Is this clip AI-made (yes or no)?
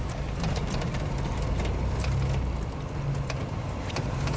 no